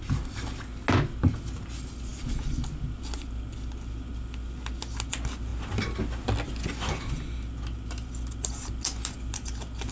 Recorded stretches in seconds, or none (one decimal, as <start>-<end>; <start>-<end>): 0.0-9.9